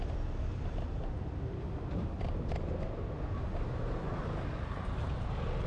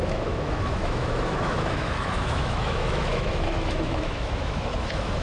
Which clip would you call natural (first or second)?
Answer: first